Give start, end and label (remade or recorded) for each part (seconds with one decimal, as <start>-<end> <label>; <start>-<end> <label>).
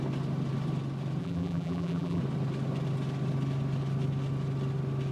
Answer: 0.0-1.2 recorded; 1.2-2.2 remade; 2.2-5.1 recorded